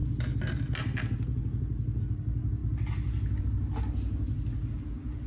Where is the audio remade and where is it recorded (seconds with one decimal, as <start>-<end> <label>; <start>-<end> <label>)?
0.0-5.3 recorded